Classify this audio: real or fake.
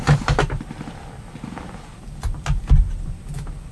real